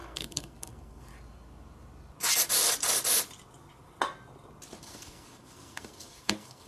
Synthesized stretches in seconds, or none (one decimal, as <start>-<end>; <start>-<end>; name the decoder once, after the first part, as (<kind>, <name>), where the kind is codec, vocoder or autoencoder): 0.0-1.1 (codec, SNAC); 4.8-6.7